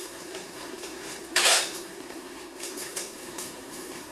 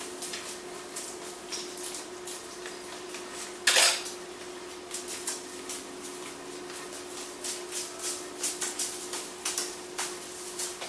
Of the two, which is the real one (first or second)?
second